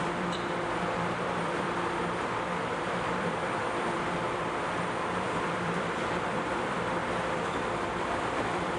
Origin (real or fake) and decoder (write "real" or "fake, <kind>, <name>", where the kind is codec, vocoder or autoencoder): fake, vocoder, BigVGAN v2